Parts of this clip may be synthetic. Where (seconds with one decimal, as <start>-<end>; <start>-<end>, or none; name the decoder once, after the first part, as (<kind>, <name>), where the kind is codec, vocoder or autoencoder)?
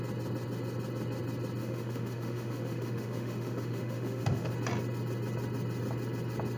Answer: 1.6-4.5 (autoencoder, DAC-VAE)